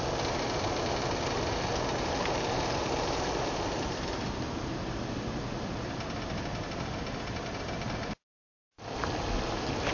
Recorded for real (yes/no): yes